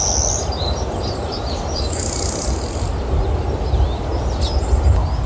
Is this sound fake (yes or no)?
no